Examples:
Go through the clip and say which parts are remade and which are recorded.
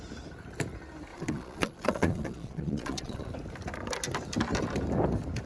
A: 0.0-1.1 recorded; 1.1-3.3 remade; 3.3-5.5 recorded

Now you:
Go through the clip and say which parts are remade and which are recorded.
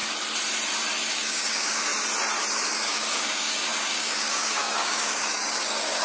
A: 0.0-1.1 recorded; 1.1-1.9 remade; 1.9-2.5 recorded; 2.5-6.0 remade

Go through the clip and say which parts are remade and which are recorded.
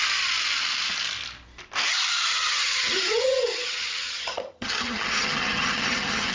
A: 0.0-2.3 recorded; 2.3-6.3 remade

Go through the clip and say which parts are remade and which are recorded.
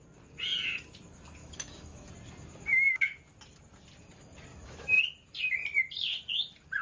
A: 0.0-1.4 recorded; 1.4-2.1 remade; 2.1-2.7 recorded; 2.7-3.2 remade; 3.2-4.5 recorded; 4.5-5.0 remade; 5.0-6.8 recorded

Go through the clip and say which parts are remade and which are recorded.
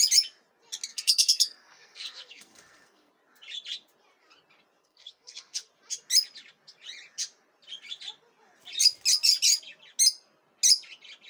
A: 0.0-0.9 recorded; 0.9-3.1 remade; 3.1-4.8 recorded; 4.8-5.7 remade; 5.7-11.3 recorded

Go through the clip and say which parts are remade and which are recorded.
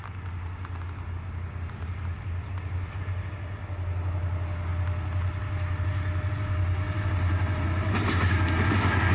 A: 0.0-9.1 recorded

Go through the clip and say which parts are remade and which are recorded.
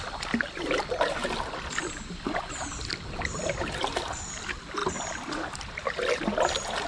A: 0.0-6.9 recorded